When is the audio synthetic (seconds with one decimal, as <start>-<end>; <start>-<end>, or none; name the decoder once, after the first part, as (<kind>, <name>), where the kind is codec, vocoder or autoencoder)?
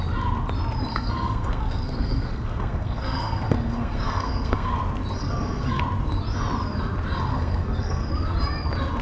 0.9-4.7 (codec, SNAC); 5.2-5.8; 7.3-8.1